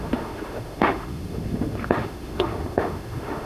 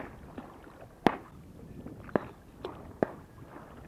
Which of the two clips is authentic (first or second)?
second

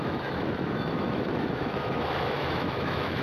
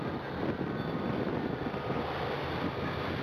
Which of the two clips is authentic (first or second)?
second